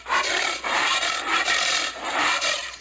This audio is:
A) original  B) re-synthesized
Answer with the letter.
B